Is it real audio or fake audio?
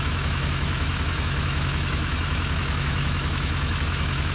fake